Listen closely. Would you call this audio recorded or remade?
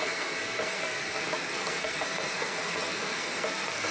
remade